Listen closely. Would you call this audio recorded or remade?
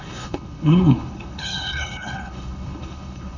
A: remade